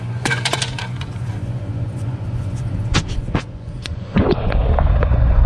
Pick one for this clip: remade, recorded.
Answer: remade